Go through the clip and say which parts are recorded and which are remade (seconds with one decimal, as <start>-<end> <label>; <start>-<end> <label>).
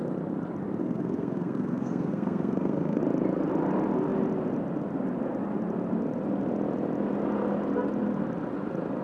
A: 0.0-0.8 recorded; 0.8-3.0 remade; 3.0-9.0 recorded